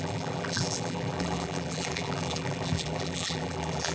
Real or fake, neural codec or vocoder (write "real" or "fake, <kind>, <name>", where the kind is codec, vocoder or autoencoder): fake, vocoder, BigVGAN v2